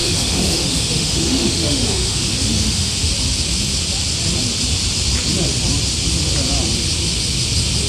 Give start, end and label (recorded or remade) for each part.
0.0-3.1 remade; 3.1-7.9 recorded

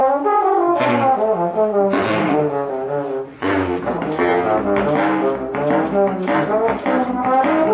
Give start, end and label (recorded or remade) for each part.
0.0-2.0 recorded; 2.0-2.7 remade; 2.7-3.3 recorded; 3.3-3.8 remade; 3.8-7.7 recorded

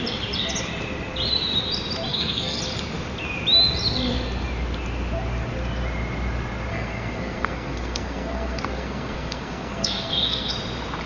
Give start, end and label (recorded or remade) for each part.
0.0-2.1 recorded; 2.1-2.6 remade; 2.6-6.7 recorded; 6.7-10.5 remade; 10.5-11.1 recorded

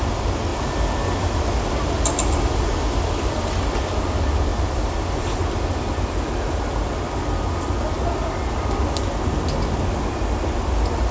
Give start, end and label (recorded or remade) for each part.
0.0-0.5 recorded; 0.5-1.4 remade; 1.4-11.1 recorded